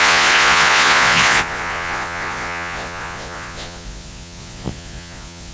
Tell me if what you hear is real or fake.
fake